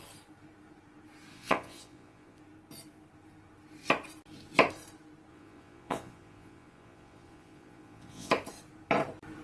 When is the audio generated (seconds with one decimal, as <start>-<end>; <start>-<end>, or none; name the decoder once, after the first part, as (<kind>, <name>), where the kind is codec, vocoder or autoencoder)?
1.3-2.4 (vocoder, Vocos); 5.3-8.3